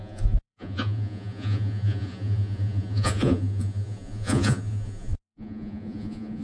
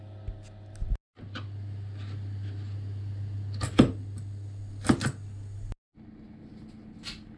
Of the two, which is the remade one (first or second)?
first